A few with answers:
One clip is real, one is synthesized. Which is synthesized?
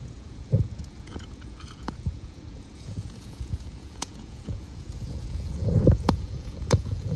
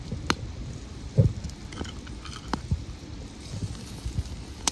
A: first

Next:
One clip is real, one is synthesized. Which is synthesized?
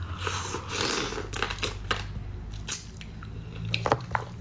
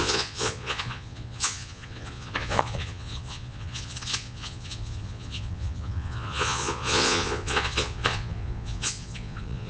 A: second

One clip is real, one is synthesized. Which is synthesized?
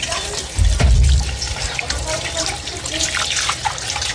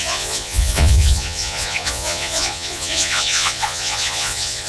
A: second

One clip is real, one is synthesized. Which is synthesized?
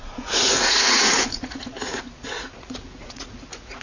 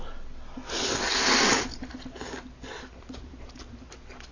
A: first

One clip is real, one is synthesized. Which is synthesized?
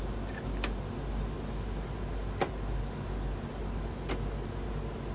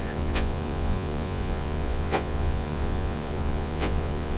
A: second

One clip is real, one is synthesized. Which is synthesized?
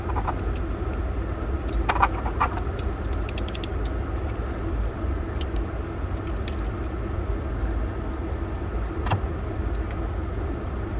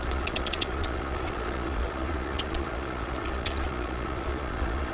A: second